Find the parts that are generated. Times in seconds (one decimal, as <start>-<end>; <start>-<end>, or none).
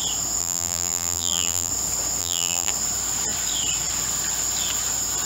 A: 0.4-1.7; 2.2-2.7